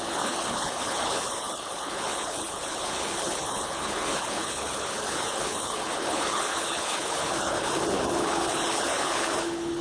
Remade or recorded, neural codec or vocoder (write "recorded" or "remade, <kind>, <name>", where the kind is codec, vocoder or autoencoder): remade, codec, HILCodec